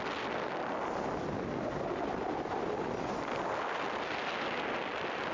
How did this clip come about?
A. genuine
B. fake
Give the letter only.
A